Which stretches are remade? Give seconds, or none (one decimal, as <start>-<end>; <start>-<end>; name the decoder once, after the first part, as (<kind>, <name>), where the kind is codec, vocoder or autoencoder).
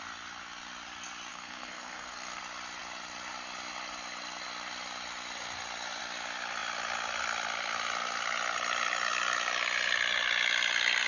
1.3-2.4 (codec, SNAC)